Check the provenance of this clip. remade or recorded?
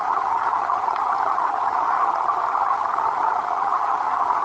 remade